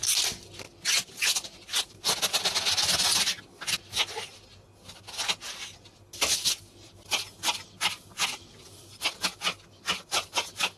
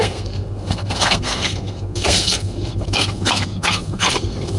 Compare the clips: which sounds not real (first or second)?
second